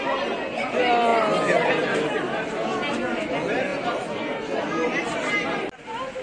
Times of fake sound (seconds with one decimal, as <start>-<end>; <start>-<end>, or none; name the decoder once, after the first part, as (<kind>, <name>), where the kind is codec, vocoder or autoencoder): none